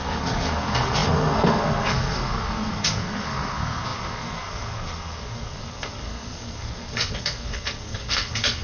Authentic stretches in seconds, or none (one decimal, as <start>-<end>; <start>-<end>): none